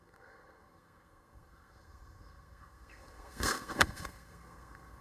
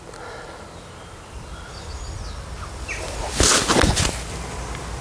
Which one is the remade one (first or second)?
first